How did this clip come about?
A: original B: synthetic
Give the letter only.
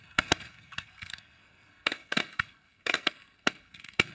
B